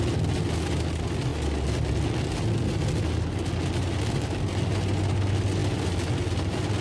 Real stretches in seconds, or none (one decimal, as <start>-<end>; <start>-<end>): 0.0-6.8